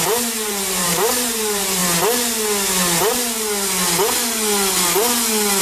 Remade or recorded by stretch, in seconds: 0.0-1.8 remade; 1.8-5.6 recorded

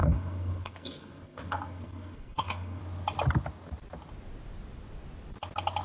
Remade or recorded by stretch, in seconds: 0.0-2.8 remade; 2.8-5.8 recorded

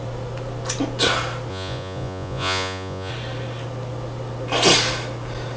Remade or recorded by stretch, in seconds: 0.0-1.5 recorded; 1.5-3.1 remade; 3.1-5.6 recorded